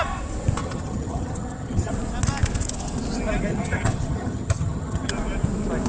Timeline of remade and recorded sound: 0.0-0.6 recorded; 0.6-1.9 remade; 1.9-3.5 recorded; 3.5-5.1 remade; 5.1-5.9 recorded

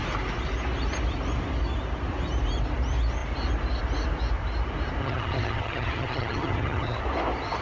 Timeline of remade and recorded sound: 0.0-5.0 recorded; 5.0-7.0 remade; 7.0-7.6 recorded

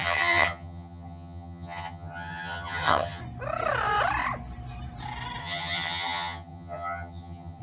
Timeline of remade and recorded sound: 0.0-3.2 remade; 3.2-5.4 recorded; 5.4-7.6 remade

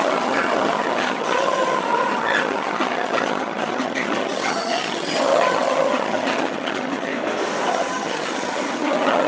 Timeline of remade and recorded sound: 0.0-7.1 remade; 7.1-7.7 recorded; 7.7-9.3 remade

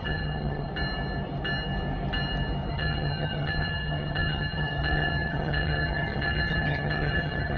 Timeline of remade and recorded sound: 0.0-0.7 remade; 0.7-2.7 recorded; 2.7-7.6 remade

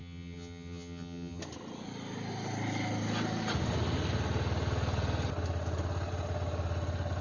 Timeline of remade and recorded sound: 0.0-1.4 remade; 1.4-7.2 recorded

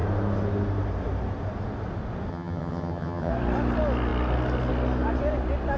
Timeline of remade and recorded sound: 0.0-2.3 recorded; 2.3-3.3 remade; 3.3-5.8 recorded

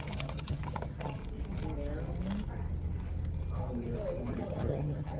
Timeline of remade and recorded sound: 0.0-1.2 remade; 1.2-4.3 recorded; 4.3-5.2 remade